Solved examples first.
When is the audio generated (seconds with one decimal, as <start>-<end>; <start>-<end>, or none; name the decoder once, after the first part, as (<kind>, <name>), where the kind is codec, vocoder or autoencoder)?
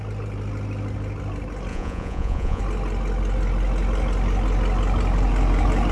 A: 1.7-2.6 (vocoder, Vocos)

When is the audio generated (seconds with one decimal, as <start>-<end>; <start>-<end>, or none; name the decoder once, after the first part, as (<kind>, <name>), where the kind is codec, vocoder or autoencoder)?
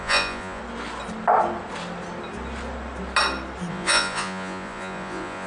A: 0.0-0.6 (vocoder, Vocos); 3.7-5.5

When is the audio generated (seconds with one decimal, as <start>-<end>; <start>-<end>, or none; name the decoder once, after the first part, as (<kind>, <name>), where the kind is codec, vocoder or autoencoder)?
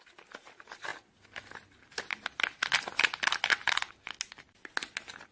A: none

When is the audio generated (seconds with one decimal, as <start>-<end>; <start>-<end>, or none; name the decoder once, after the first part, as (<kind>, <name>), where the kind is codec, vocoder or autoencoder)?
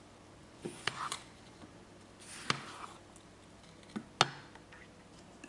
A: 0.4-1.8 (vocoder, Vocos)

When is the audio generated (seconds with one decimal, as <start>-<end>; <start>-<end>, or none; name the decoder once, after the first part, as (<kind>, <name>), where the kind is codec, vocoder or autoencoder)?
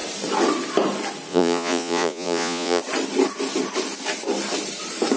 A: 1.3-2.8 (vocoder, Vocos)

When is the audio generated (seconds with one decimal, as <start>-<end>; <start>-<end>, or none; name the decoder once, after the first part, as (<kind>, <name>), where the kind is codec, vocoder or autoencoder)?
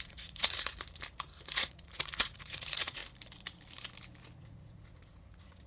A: 0.0-0.7 (vocoder, Vocos); 1.4-3.0; 4.4-5.7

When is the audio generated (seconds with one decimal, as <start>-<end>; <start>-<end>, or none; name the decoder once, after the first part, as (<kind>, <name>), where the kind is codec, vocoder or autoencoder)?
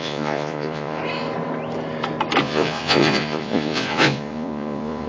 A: 0.0-1.0 (vocoder, Vocos); 2.4-5.1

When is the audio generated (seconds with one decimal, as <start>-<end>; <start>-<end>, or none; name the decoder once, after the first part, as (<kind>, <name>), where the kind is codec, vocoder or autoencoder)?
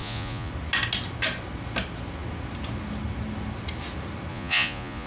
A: 0.0-0.5 (vocoder, Vocos); 4.3-5.1